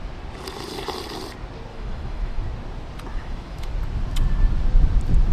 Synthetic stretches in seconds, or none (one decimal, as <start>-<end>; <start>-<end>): 1.7-2.4; 3.1-3.7